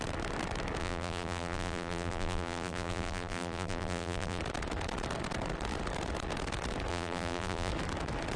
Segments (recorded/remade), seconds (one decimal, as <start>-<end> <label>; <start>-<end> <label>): 0.0-0.8 recorded; 0.8-4.4 remade; 4.4-6.9 recorded; 6.9-7.7 remade; 7.7-8.4 recorded